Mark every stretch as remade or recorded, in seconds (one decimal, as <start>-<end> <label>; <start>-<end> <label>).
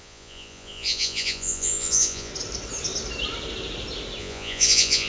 0.0-2.3 remade; 2.3-4.2 recorded; 4.2-5.1 remade